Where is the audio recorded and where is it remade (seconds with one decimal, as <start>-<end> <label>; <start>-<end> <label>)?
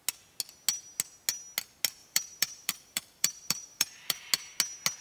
0.0-2.0 recorded; 2.0-4.3 remade; 4.3-5.0 recorded